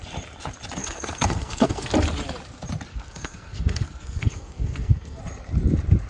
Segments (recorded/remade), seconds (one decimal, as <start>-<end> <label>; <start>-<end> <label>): 0.0-0.8 recorded; 0.8-1.9 remade; 1.9-2.9 recorded; 2.9-5.2 remade; 5.2-6.1 recorded